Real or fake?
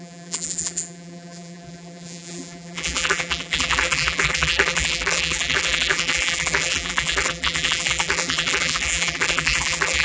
fake